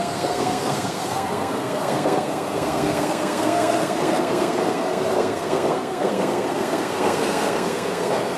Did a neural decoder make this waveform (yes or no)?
yes